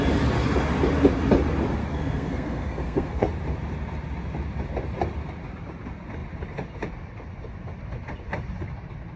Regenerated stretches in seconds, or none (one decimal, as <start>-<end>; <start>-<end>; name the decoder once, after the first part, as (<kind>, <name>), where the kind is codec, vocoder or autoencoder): 1.8-3.3 (codec, SNAC)